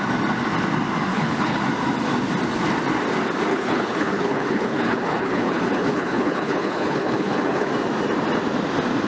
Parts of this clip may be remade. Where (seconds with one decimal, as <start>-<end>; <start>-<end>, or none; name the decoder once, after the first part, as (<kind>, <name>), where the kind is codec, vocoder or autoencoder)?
1.1-1.6 (codec, HILCodec); 3.5-7.7